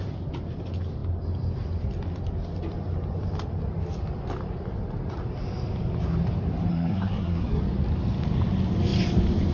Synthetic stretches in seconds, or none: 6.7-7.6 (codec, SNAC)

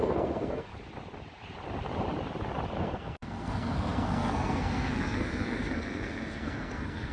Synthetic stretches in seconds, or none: 0.0-0.7 (codec, SNAC); 2.8-7.1

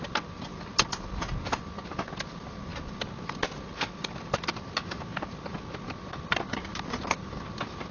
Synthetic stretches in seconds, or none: 6.7-7.4 (vocoder, BigVGAN v2)

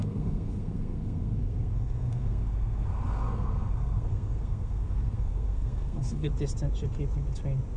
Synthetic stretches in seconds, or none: 0.0-6.3 (codec, SNAC)